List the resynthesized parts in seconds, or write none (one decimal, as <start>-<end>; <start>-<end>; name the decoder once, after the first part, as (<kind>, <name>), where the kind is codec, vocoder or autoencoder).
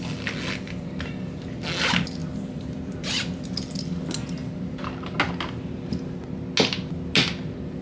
2.2-3.4 (vocoder, BigVGAN v2)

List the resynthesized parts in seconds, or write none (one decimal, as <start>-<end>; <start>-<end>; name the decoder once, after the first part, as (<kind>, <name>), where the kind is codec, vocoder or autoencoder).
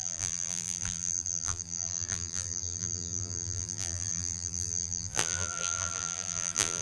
0.0-6.8 (vocoder, BigVGAN v2)